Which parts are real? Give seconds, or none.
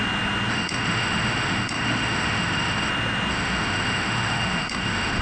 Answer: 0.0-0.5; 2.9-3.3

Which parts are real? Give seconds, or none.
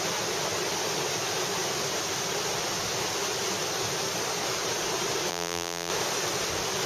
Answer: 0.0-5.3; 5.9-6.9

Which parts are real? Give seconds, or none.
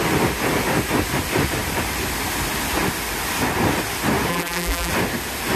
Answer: 0.0-4.3; 4.9-5.6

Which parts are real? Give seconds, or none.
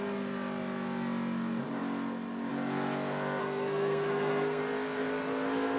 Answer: 0.0-3.4; 4.6-5.8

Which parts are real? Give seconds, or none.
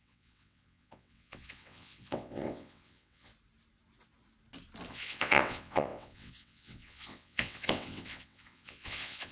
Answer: 3.3-4.9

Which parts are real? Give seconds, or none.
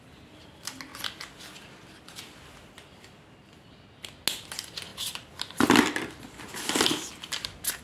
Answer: 0.0-4.9; 6.7-7.8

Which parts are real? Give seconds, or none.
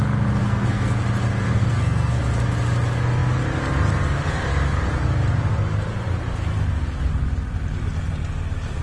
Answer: 0.0-0.4; 1.0-1.4; 2.2-8.8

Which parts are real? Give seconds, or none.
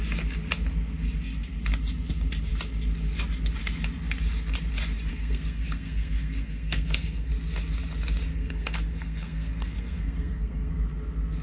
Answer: 0.0-5.1; 7.3-8.3; 10.7-11.4